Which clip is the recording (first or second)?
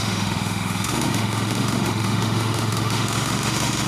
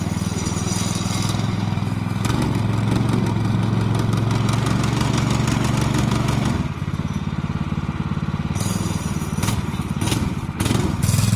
second